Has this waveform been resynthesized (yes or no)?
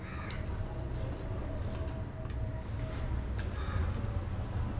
no